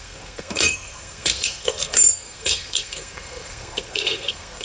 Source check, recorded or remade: remade